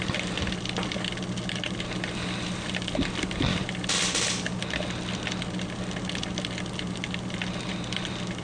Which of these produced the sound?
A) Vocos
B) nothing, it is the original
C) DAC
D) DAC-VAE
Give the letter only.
B